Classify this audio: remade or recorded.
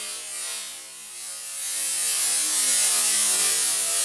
recorded